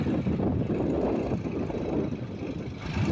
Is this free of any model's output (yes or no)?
yes